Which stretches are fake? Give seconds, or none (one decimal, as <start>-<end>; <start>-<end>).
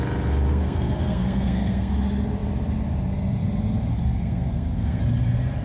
0.5-1.9; 3.9-5.0